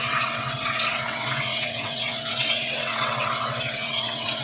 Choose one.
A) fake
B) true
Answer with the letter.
A